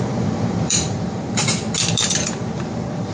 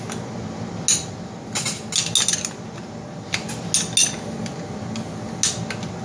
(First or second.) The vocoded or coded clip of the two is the first